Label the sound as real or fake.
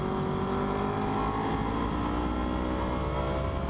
real